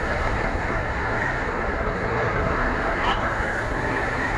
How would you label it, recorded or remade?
remade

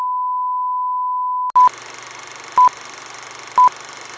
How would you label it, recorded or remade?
recorded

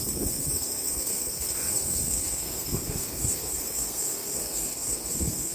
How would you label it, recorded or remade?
remade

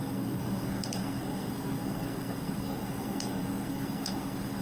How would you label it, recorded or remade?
remade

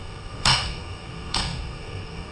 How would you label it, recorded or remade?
remade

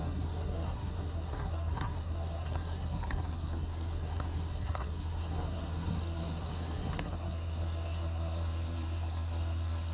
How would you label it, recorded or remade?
remade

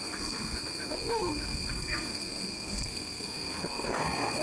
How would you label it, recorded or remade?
remade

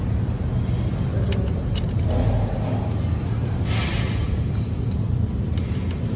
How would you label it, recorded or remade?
recorded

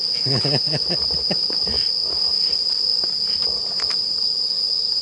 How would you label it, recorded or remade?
recorded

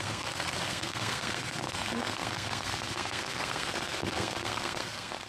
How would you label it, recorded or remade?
remade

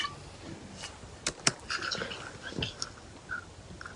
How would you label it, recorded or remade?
recorded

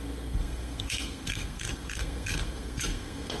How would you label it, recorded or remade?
remade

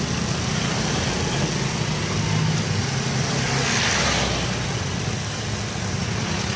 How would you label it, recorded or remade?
recorded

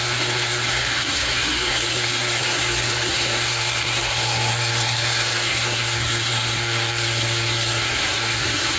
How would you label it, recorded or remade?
remade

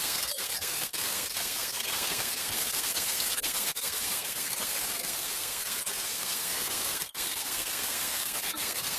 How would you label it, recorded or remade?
remade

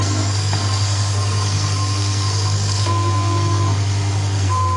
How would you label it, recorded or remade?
remade